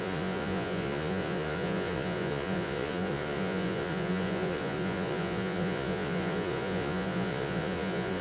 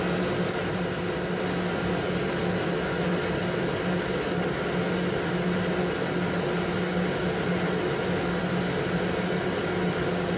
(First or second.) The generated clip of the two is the first